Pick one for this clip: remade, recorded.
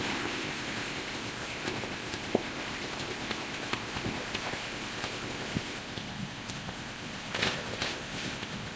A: remade